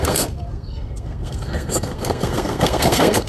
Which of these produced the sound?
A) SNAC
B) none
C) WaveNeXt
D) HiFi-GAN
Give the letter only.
A